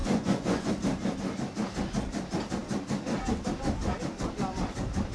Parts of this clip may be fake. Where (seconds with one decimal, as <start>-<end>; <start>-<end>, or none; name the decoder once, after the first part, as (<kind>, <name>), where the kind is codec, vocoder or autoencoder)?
0.0-0.7 (vocoder, Vocos)